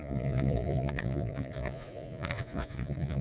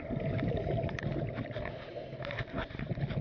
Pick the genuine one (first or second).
second